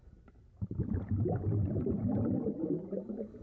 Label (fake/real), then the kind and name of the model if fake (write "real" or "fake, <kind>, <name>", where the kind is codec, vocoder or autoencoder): fake, vocoder, BigVGAN v2